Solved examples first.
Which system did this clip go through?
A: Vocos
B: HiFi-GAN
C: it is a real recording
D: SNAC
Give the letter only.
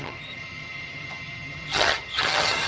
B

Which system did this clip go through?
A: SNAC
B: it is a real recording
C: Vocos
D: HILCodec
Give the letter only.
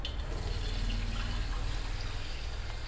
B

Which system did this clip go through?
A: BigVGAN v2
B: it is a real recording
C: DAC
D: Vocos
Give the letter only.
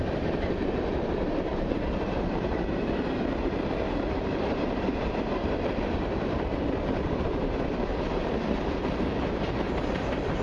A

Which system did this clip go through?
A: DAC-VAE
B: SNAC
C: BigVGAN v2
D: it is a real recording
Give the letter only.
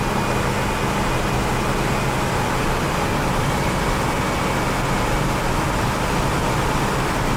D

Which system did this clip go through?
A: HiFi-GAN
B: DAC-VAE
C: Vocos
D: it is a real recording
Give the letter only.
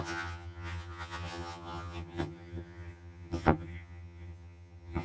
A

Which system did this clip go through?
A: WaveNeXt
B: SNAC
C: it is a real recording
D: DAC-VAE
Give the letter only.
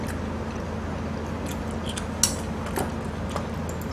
C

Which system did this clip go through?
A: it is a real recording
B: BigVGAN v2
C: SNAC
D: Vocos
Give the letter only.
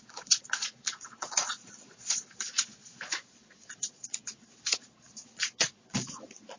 D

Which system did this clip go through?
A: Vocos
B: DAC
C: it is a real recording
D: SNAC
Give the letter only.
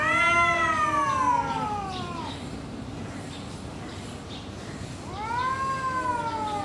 C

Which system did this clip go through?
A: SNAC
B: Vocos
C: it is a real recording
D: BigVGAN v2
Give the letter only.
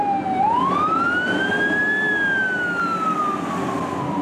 C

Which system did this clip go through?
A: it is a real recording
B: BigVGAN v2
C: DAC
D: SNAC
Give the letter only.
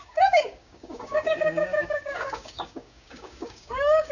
C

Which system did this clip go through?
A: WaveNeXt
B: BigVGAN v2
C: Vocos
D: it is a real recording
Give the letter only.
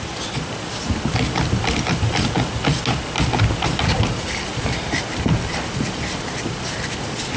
D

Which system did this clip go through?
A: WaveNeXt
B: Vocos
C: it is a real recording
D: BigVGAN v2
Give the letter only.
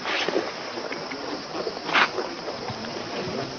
C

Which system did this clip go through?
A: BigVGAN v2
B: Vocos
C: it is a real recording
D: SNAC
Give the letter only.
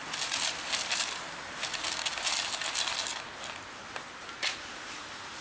C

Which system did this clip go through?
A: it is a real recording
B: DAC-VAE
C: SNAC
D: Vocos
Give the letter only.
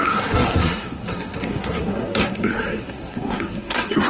C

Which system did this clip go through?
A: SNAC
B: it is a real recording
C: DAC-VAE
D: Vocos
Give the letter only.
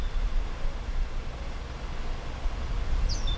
B